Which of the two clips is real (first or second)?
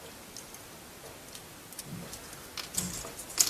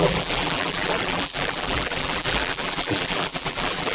first